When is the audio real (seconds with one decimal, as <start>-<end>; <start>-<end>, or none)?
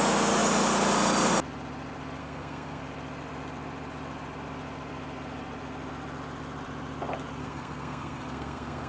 0.0-2.2; 2.8-7.4